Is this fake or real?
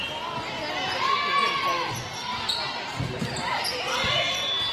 real